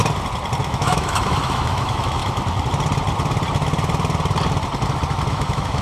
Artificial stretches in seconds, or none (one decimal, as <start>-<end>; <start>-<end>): 0.6-2.2; 5.3-5.8